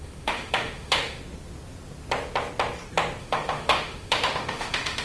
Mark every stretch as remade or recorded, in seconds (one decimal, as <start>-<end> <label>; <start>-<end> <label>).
0.0-1.2 remade; 1.2-3.2 recorded; 3.2-5.0 remade